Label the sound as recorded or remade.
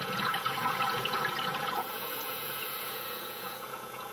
remade